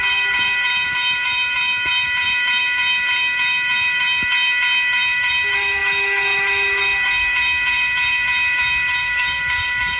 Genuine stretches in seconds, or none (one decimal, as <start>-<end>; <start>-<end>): none